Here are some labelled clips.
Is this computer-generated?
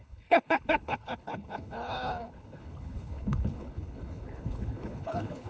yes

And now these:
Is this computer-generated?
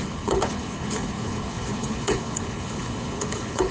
yes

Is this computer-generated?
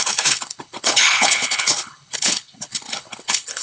yes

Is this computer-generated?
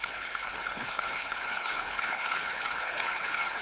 yes